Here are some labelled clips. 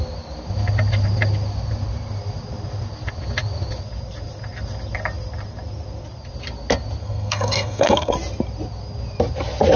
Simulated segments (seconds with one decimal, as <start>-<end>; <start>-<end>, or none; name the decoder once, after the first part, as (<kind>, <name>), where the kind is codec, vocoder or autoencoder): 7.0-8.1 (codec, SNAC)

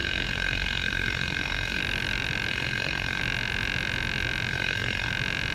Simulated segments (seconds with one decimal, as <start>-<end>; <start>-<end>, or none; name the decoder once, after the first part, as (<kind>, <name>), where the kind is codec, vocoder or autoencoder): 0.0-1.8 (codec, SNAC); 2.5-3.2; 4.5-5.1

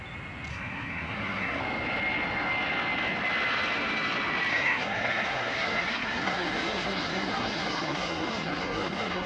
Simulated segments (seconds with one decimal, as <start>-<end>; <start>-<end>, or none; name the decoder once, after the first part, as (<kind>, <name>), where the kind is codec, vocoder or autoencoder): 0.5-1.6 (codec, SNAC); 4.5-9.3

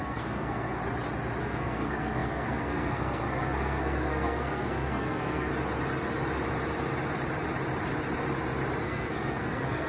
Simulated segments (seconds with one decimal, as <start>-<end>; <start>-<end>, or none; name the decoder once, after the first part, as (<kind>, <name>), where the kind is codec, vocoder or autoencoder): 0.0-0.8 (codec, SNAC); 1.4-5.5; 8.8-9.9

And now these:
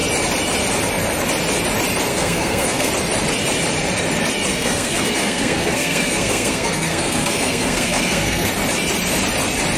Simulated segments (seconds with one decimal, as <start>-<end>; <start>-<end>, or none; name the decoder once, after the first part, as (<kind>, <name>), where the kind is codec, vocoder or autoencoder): 2.1-2.9 (codec, SNAC); 4.5-8.5

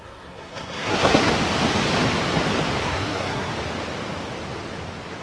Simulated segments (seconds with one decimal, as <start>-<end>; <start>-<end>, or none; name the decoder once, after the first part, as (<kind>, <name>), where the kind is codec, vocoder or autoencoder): 0.0-1.3 (codec, SNAC); 2.8-3.5